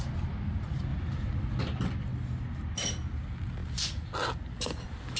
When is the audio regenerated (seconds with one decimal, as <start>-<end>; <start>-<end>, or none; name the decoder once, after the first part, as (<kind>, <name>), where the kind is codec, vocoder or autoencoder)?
none

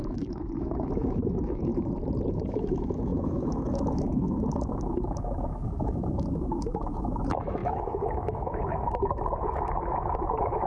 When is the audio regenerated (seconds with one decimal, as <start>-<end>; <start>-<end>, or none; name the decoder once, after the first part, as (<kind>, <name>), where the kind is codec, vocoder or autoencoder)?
0.0-1.7 (autoencoder, DAC-VAE); 2.3-10.7

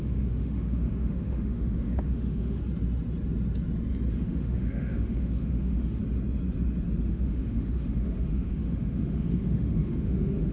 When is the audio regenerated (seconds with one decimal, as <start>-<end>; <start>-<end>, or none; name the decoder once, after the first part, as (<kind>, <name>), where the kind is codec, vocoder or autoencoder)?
0.0-2.6 (autoencoder, DAC-VAE); 4.1-6.0; 7.1-10.5

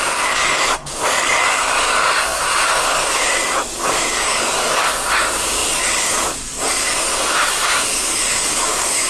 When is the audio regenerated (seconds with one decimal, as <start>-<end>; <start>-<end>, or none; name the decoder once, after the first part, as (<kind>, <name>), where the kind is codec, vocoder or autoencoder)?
0.0-9.1 (codec, DAC)

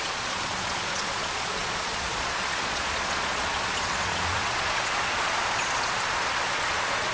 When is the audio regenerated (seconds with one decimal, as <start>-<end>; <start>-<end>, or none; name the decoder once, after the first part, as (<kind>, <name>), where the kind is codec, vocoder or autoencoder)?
0.0-7.1 (vocoder, Vocos)

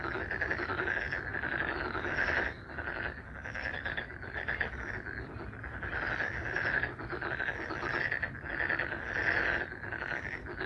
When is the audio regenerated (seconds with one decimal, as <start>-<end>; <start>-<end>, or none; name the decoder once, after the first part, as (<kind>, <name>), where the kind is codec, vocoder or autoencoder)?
none

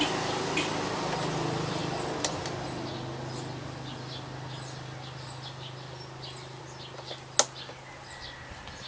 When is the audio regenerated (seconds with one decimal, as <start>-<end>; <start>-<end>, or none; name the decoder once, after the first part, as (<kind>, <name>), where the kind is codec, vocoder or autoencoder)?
none